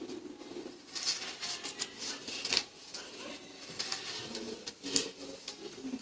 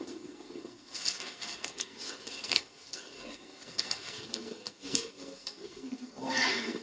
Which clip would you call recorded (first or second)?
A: first